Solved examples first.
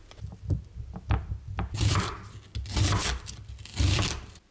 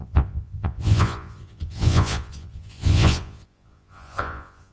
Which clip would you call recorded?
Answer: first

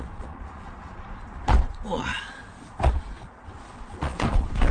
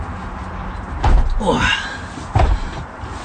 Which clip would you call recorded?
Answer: second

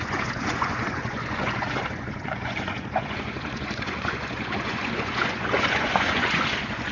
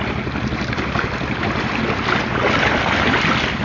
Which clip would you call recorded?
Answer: second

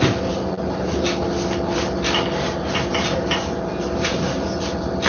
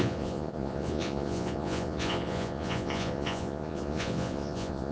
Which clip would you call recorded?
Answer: first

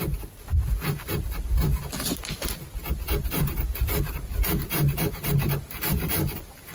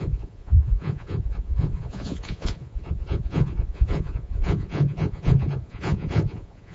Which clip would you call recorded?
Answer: first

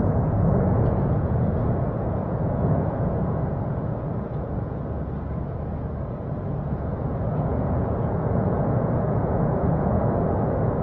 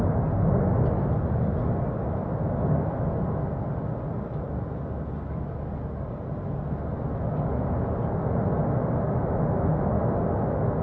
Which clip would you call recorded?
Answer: second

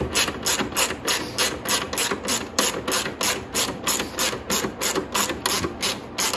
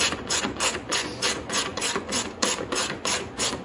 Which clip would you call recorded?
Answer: first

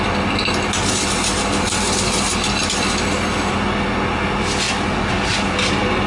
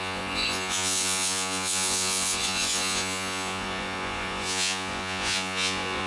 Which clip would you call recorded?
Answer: first